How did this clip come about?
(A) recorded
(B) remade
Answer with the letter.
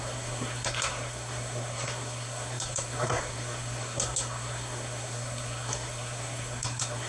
B